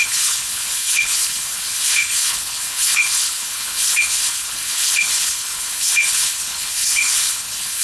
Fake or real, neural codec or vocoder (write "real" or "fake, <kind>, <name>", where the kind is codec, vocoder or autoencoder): fake, codec, HILCodec